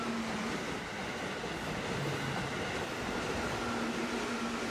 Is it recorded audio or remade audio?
recorded